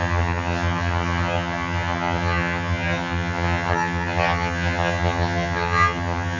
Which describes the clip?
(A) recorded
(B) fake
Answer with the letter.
B